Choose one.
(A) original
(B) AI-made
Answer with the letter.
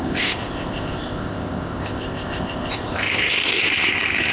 B